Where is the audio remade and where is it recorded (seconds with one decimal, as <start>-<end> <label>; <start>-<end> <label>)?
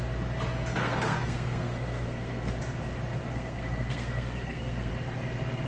0.0-0.8 recorded; 0.8-2.5 remade; 2.5-3.2 recorded; 3.2-4.9 remade; 4.9-5.7 recorded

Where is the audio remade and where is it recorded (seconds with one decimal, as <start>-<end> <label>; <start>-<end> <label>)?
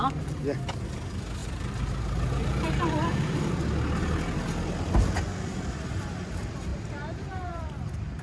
0.0-1.4 recorded; 1.4-3.5 remade; 3.5-6.7 recorded; 6.7-7.6 remade; 7.6-8.2 recorded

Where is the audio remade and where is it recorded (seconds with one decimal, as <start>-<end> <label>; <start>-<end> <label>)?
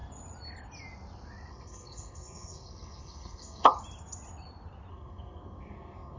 0.0-1.5 recorded; 1.5-3.7 remade; 3.7-4.9 recorded; 4.9-6.2 remade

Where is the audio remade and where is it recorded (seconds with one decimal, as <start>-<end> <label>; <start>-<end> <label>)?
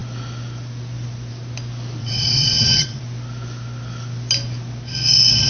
0.0-2.0 recorded; 2.0-3.0 remade; 3.0-5.5 recorded